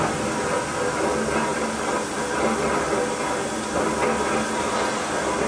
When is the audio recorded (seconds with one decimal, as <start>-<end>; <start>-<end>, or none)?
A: 0.0-5.5